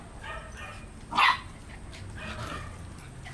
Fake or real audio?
real